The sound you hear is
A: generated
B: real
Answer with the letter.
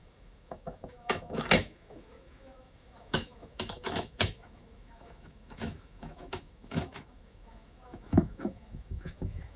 A